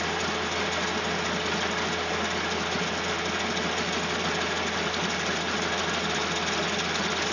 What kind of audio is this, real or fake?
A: real